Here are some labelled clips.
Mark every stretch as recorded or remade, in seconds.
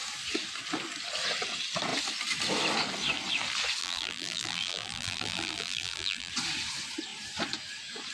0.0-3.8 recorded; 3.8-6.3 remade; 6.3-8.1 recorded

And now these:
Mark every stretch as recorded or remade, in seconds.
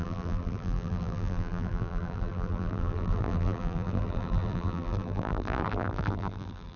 0.0-6.8 remade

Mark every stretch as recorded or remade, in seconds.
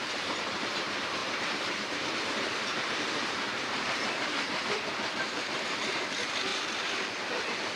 0.0-7.8 remade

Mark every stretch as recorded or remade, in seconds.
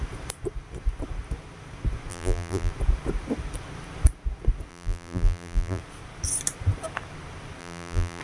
0.0-2.1 recorded; 2.1-2.7 remade; 2.7-4.7 recorded; 4.7-5.8 remade; 5.8-7.6 recorded; 7.6-8.2 remade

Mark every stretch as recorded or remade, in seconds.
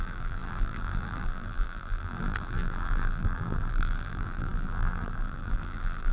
0.0-6.1 remade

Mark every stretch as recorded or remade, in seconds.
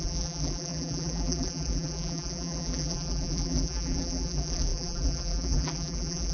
0.0-6.3 remade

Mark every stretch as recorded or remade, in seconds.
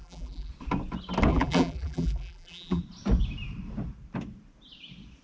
0.0-0.5 remade; 0.5-1.3 recorded; 1.3-2.8 remade; 2.8-5.2 recorded